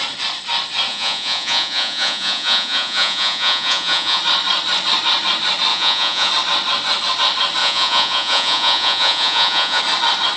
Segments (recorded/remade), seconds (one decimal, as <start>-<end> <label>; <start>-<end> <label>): 0.0-0.9 recorded; 0.9-4.2 remade; 4.2-5.7 recorded; 5.7-6.3 remade; 6.3-7.6 recorded; 7.6-9.8 remade; 9.8-10.4 recorded